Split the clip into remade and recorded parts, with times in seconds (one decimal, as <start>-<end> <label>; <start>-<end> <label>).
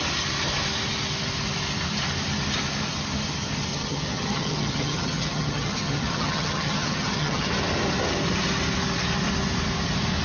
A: 0.0-3.7 recorded; 3.7-7.5 remade; 7.5-10.2 recorded